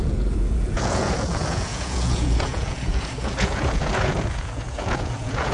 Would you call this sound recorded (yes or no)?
no